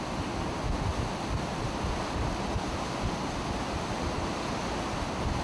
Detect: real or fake real